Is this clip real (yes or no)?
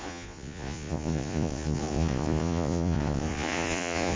no